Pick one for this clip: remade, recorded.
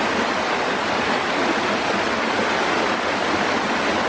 recorded